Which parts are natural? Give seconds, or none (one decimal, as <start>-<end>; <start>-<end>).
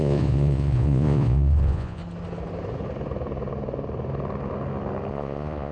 2.0-5.1